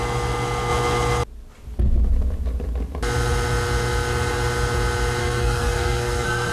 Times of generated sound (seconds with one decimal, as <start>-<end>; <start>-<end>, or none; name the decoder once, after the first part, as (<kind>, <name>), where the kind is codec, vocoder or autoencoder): 5.2-6.5 (codec, SNAC)